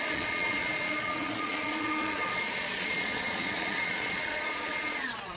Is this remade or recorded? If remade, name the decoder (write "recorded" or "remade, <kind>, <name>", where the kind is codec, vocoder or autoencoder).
remade, vocoder, Vocos